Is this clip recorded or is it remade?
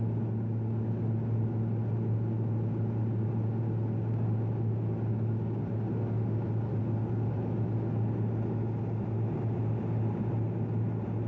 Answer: recorded